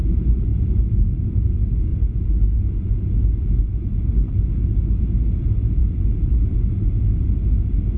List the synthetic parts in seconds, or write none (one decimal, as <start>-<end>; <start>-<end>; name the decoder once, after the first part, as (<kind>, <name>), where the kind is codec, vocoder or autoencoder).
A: none